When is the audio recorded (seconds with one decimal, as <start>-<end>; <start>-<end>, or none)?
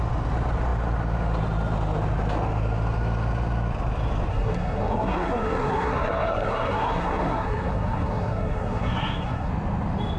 0.0-4.3; 9.5-10.2